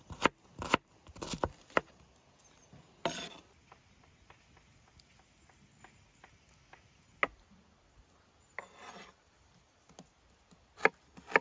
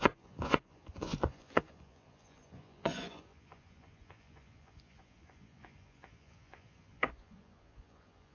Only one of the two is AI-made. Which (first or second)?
second